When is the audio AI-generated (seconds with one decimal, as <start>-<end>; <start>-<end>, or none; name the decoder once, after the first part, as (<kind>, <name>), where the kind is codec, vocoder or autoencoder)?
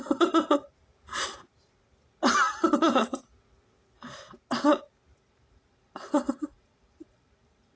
0.0-0.8 (vocoder, BigVGAN v2); 5.2-7.8